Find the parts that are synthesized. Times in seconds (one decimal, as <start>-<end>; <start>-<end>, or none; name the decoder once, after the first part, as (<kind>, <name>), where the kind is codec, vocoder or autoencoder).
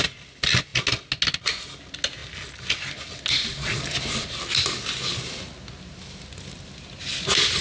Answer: none